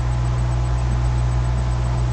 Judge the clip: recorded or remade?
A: recorded